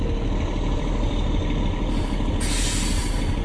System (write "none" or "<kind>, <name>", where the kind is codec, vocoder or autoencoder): none